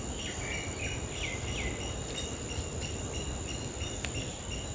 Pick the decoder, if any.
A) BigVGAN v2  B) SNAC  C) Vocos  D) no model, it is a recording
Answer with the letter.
D